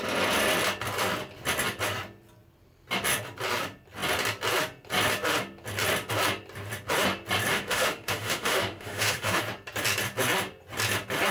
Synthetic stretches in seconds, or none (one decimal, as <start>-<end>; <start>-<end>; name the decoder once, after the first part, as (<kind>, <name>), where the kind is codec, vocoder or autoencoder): 7.5-9.4 (autoencoder, DAC-VAE)